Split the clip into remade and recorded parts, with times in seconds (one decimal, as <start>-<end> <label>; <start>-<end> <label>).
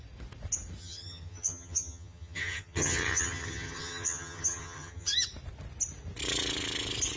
0.0-0.8 recorded; 0.8-5.1 remade; 5.1-7.2 recorded